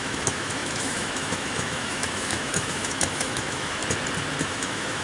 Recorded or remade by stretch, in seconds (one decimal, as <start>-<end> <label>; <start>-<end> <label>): 0.0-3.8 remade; 3.8-4.4 recorded; 4.4-5.0 remade